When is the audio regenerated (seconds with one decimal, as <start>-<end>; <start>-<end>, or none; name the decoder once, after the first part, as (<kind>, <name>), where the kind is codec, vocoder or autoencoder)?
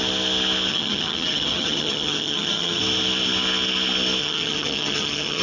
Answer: 0.7-2.8 (vocoder, HiFi-GAN); 4.2-5.4